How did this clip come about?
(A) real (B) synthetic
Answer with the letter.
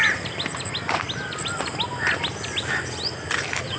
A